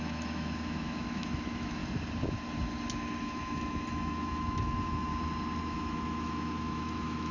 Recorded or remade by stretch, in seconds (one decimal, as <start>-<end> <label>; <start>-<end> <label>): 0.0-1.8 remade; 1.8-3.2 recorded; 3.2-5.1 remade; 5.1-5.6 recorded; 5.6-7.3 remade